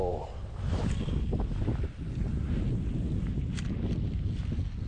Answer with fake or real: real